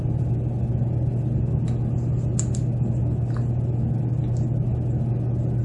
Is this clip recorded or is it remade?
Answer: recorded